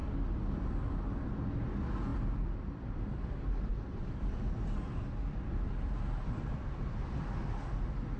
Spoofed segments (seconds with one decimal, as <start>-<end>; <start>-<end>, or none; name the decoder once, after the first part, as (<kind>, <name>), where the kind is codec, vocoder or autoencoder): none